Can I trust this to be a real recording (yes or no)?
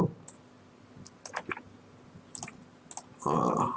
yes